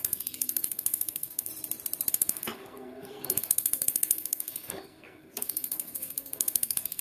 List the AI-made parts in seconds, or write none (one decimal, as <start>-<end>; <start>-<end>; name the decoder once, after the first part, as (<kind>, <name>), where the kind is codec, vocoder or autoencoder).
0.0-1.5 (codec, SNAC); 2.1-7.0